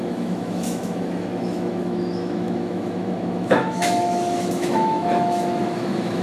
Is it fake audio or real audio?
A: fake